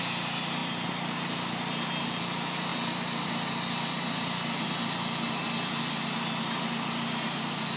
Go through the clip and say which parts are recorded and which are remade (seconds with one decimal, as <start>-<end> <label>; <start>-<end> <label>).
0.0-7.8 recorded